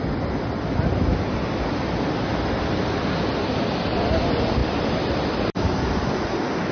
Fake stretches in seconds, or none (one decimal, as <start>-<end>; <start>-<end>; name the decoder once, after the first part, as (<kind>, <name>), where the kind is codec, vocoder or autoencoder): none